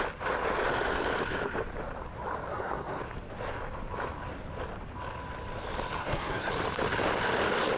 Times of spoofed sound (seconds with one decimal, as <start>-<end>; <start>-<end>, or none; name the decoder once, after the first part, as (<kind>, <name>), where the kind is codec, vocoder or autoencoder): 2.5-3.0 (codec, SNAC); 6.0-6.5